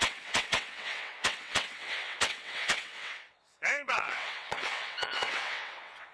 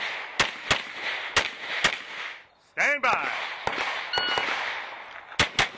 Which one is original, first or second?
second